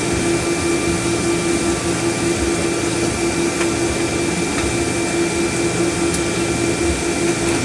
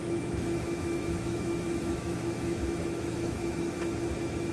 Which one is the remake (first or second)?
second